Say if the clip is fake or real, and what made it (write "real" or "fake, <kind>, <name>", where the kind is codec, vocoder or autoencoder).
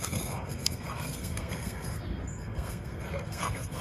fake, codec, SNAC